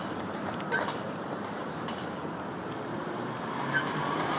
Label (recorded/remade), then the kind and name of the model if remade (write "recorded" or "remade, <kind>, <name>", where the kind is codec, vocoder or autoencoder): remade, vocoder, BigVGAN v2